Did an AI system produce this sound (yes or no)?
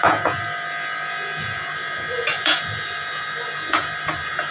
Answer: yes